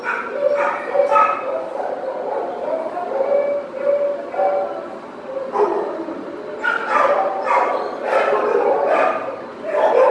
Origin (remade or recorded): recorded